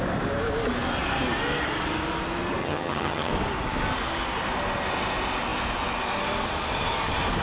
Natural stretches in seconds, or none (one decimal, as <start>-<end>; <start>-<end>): 0.0-2.6; 3.3-7.4